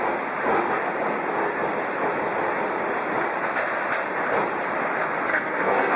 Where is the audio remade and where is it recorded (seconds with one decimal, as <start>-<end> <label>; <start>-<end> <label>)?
0.0-5.3 recorded; 5.3-6.0 remade